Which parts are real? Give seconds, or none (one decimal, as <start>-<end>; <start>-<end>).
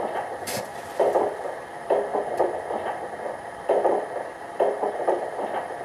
0.7-1.2; 2.1-4.5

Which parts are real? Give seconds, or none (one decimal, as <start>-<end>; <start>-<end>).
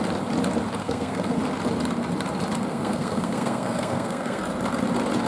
0.0-0.8; 1.4-2.7; 4.4-5.3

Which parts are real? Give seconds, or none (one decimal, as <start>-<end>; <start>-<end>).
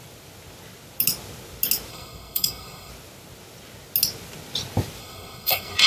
0.0-1.9; 2.9-5.0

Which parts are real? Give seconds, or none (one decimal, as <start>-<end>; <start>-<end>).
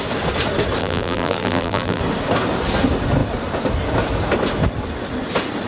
0.0-0.8; 2.0-5.7